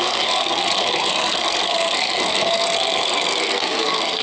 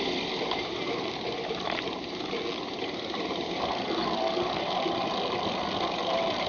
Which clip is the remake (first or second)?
first